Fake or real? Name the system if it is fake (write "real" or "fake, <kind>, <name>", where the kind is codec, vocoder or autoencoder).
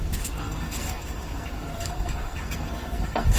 fake, codec, SNAC